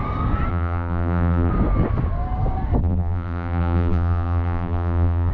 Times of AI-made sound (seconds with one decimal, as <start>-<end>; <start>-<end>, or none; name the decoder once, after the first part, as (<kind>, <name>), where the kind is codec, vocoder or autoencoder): 0.5-1.5 (vocoder, BigVGAN v2); 2.8-5.3